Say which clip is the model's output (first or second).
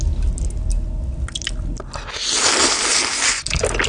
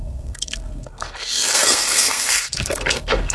second